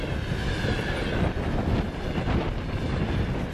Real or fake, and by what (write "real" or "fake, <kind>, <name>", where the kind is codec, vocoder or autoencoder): real